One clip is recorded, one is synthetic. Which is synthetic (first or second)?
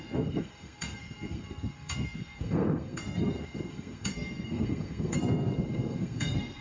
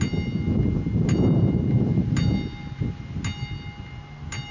first